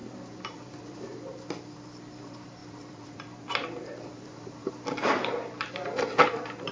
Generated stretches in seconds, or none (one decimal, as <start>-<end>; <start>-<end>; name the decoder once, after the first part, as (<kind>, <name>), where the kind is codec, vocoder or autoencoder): 0.0-1.8 (vocoder, BigVGAN v2); 2.6-4.7